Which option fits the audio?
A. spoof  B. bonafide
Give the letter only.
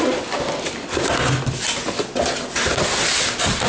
B